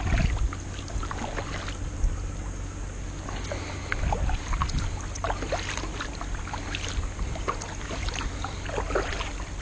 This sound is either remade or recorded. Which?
recorded